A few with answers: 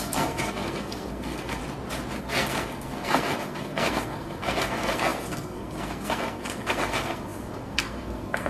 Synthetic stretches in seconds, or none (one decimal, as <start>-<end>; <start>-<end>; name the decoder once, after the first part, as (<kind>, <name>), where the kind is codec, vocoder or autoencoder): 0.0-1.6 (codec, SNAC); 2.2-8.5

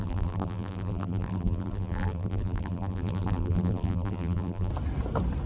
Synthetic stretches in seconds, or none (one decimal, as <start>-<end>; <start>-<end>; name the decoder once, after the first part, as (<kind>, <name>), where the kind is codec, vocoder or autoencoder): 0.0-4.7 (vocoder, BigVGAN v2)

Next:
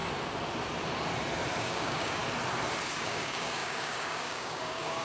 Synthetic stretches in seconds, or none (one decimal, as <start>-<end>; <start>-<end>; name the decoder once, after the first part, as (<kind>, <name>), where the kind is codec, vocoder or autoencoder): 1.6-2.2 (codec, DAC); 3.0-5.0